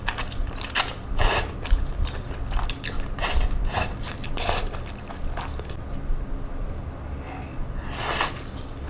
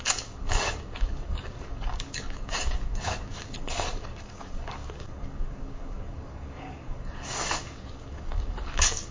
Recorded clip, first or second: first